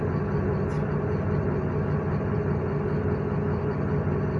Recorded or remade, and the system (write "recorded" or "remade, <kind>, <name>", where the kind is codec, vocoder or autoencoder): recorded